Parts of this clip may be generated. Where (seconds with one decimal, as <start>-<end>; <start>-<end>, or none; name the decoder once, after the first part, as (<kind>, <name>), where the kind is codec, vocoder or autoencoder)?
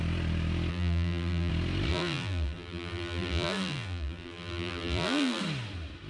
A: 0.7-1.5 (vocoder, BigVGAN v2); 1.9-5.4